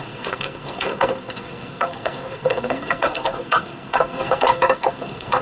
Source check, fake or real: fake